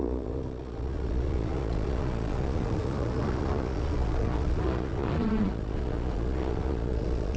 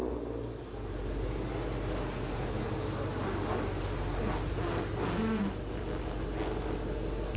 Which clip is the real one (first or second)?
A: second